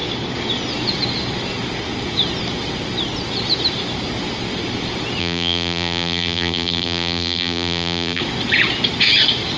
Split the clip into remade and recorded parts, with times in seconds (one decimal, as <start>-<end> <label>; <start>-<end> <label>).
0.0-5.2 recorded; 5.2-8.2 remade; 8.2-9.6 recorded